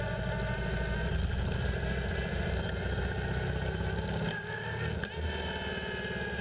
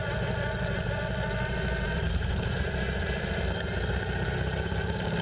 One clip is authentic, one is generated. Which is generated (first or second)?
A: second